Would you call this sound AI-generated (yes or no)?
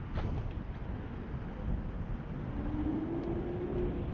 no